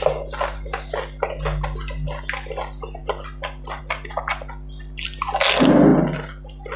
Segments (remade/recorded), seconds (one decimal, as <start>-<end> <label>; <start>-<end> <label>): 0.0-6.8 recorded